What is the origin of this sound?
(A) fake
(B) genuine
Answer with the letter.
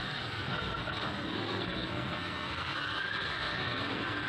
A